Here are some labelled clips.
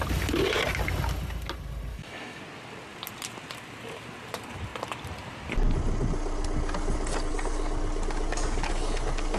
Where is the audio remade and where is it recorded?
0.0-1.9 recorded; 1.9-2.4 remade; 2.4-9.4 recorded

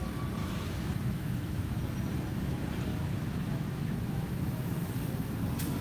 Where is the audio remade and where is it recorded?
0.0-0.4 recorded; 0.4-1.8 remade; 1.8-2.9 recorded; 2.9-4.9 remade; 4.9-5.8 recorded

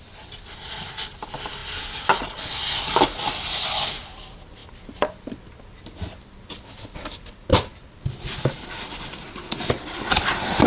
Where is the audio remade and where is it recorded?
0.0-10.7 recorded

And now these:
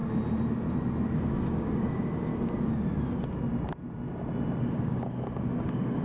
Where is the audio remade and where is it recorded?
0.0-1.1 recorded; 1.1-2.3 remade; 2.3-4.6 recorded; 4.6-6.0 remade